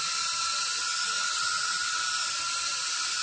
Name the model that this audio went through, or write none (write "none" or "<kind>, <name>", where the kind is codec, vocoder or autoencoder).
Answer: none